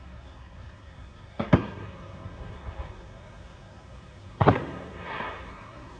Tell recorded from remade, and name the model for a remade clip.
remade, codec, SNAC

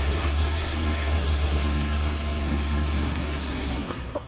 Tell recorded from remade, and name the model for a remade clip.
remade, codec, SNAC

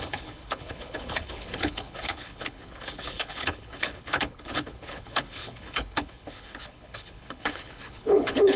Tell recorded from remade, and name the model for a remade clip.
remade, codec, HILCodec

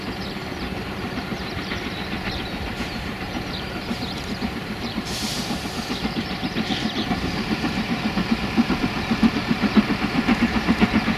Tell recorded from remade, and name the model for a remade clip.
remade, vocoder, BigVGAN v2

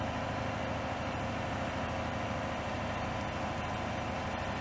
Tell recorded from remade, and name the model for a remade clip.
recorded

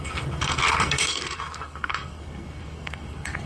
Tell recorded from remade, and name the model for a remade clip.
remade, codec, SNAC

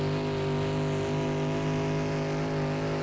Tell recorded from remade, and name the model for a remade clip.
recorded